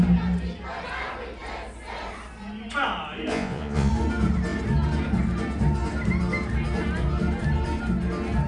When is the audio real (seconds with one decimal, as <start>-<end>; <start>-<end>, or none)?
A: 0.0-3.3; 3.9-8.5